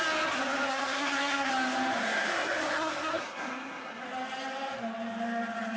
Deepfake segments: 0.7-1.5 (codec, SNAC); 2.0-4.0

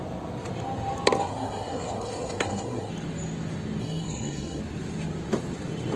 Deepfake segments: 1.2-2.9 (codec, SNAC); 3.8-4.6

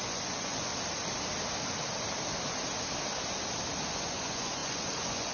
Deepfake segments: 0.0-0.7 (vocoder, Vocos); 3.9-5.3

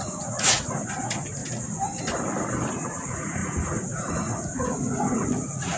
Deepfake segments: 0.0-1.4 (vocoder, Vocos); 2.7-5.8

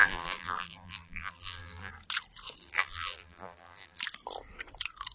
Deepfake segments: 0.0-1.9 (vocoder, BigVGAN v2); 2.6-4.0

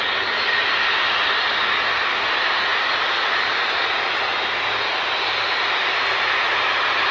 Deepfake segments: none

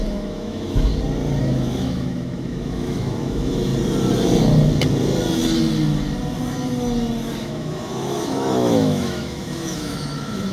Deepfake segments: 0.0-0.9 (autoencoder, DAC-VAE); 1.4-3.7; 7.4-10.5

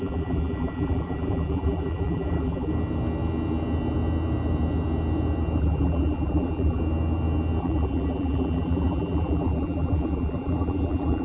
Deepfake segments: 0.0-2.7 (vocoder, BigVGAN v2); 5.6-6.8; 7.6-11.2